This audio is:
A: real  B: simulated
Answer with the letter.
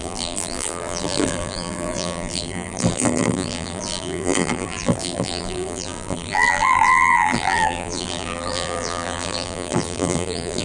B